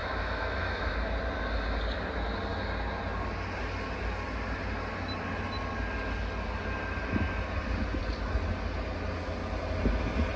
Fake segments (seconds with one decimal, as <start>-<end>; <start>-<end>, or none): 0.0-0.9